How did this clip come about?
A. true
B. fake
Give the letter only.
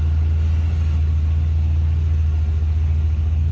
A